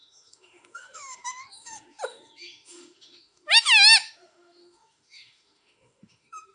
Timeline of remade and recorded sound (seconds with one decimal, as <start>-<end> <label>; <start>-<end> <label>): 0.0-6.5 remade